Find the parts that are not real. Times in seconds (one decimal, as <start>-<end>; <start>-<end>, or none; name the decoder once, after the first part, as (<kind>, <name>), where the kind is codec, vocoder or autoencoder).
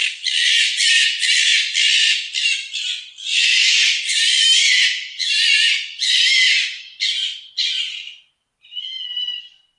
none